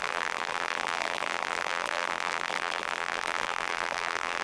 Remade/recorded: remade